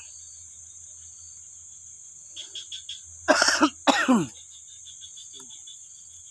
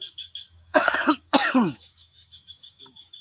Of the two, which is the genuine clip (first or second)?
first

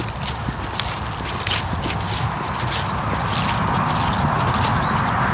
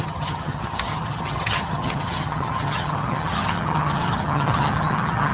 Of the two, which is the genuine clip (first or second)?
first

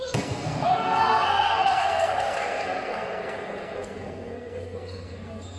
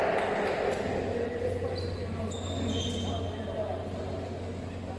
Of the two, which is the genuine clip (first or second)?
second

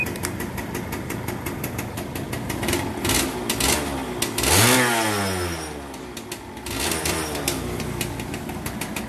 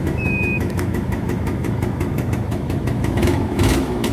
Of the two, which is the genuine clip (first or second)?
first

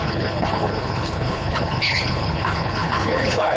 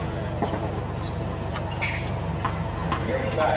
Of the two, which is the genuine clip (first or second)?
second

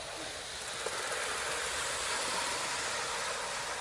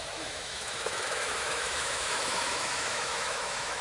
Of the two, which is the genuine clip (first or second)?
first